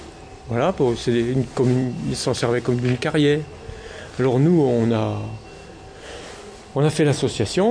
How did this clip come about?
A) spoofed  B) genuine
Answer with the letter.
B